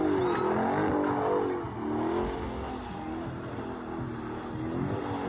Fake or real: real